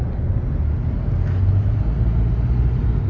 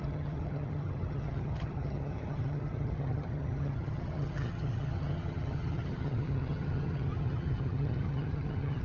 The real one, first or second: first